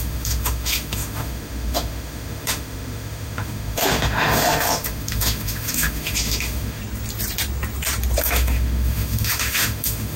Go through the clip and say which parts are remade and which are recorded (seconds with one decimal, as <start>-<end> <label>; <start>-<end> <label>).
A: 0.0-6.8 remade; 6.8-8.2 recorded; 8.2-10.2 remade